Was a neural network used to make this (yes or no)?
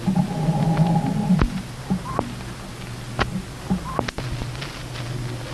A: no